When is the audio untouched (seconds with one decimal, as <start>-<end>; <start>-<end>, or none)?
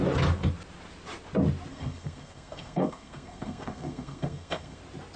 0.0-1.7; 4.8-5.2